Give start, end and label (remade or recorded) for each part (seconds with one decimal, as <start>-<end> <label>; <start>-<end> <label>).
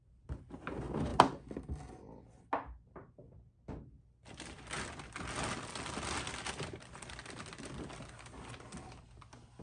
0.0-9.6 recorded